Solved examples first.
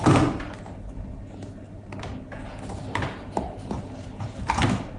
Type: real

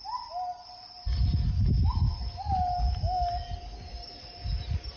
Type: real